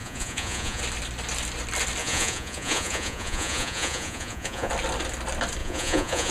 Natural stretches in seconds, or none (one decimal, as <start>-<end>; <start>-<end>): 0.8-2.0; 4.7-5.6